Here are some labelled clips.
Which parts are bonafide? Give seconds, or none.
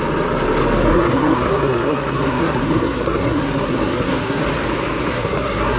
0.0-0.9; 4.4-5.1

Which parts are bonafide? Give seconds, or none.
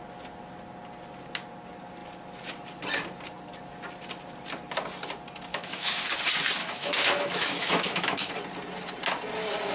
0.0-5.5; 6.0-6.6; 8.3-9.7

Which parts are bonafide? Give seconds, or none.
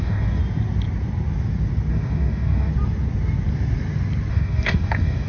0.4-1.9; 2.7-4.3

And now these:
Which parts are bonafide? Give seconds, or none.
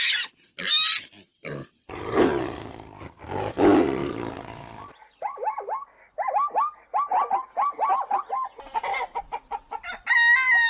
0.0-10.7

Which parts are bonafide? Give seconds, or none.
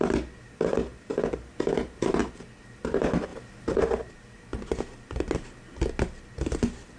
0.0-0.9; 2.2-7.0